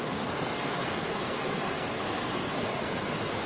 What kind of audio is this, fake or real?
fake